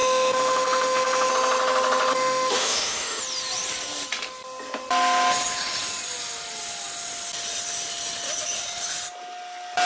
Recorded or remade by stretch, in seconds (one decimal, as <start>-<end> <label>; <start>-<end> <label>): 0.0-1.3 remade; 1.3-2.1 recorded; 2.1-3.2 remade; 3.2-9.9 recorded